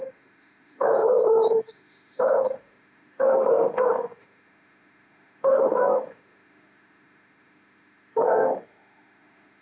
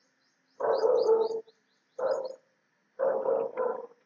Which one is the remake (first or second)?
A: first